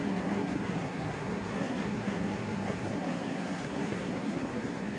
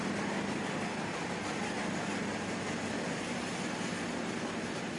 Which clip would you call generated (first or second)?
first